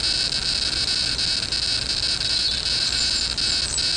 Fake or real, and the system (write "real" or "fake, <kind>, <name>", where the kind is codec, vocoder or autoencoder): real